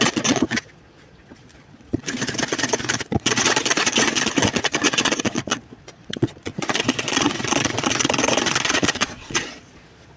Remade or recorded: remade